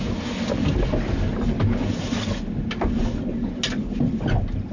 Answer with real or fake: real